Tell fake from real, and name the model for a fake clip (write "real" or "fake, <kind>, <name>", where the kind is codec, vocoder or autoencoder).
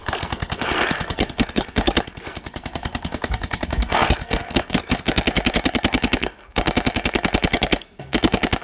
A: fake, codec, SNAC